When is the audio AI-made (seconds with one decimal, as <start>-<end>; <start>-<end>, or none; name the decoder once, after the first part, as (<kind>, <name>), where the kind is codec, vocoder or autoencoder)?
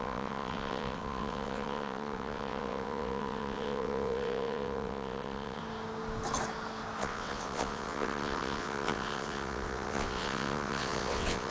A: 0.0-5.6 (vocoder, WaveNeXt); 7.0-11.5